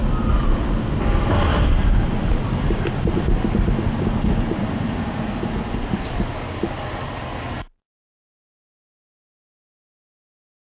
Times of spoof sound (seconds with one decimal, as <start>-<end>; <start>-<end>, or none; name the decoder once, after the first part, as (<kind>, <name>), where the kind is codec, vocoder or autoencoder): 1.5-5.3 (vocoder, BigVGAN v2)